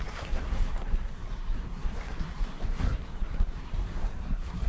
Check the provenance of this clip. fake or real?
fake